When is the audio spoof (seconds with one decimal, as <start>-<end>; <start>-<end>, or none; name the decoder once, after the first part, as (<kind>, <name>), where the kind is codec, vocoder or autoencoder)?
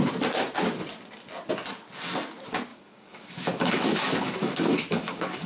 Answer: 2.7-5.5 (codec, DAC)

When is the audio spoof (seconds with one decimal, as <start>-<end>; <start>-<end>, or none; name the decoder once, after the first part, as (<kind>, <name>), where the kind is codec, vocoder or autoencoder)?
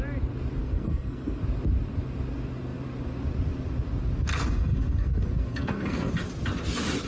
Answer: 0.6-1.4 (codec, SNAC); 4.3-6.1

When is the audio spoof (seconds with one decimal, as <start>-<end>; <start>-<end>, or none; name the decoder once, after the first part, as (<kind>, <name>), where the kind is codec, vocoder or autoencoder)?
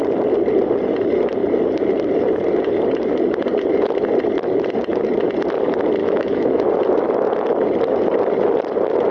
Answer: 6.0-6.7 (autoencoder, DAC-VAE)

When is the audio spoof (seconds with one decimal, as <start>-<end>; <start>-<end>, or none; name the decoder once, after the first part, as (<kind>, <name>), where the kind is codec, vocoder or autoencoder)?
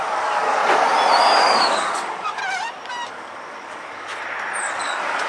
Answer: 0.0-0.6 (codec, DAC); 1.2-2.4; 3.1-4.1; 4.6-5.3